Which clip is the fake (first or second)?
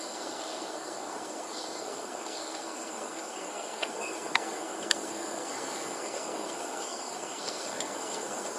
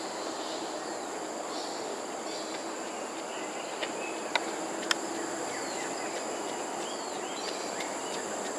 first